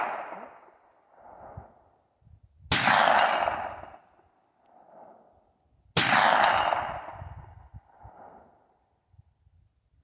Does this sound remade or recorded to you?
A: recorded